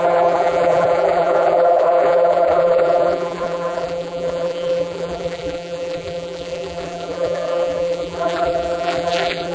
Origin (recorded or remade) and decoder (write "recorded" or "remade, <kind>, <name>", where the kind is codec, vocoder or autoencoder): remade, vocoder, BigVGAN v2